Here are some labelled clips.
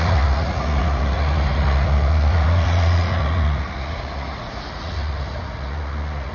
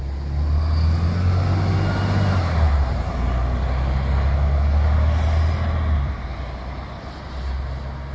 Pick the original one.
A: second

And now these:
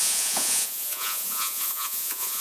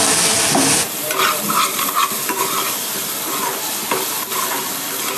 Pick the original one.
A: second